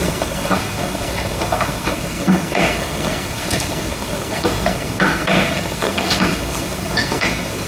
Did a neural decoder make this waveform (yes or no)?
yes